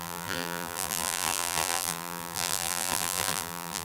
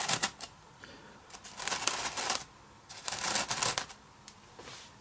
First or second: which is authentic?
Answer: second